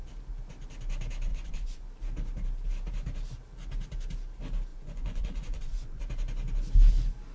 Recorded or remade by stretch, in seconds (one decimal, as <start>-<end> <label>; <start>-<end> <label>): 0.0-1.3 recorded; 1.3-1.8 remade; 1.8-4.7 recorded; 4.7-6.0 remade; 6.0-7.3 recorded